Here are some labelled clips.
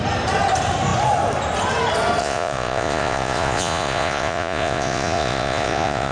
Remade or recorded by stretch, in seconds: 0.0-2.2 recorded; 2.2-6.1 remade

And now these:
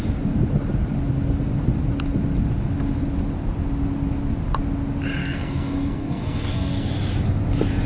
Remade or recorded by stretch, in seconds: 0.0-5.2 recorded; 5.2-6.9 remade; 6.9-7.9 recorded

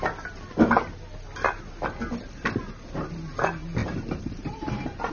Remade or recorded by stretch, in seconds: 0.0-3.8 recorded; 3.8-5.1 remade

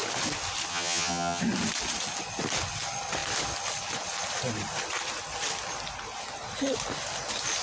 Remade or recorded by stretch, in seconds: 0.0-0.7 recorded; 0.7-1.4 remade; 1.4-7.6 recorded

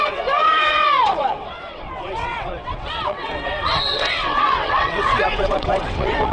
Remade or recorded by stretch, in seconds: 0.0-6.3 remade

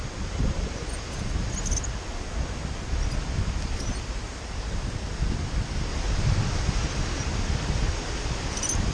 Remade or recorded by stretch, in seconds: 0.0-5.9 recorded; 5.9-6.6 remade; 6.6-8.9 recorded